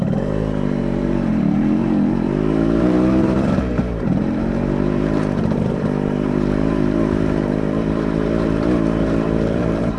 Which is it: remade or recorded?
remade